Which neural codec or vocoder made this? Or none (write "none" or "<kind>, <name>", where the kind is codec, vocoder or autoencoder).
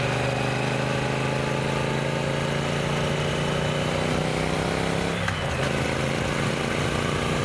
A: none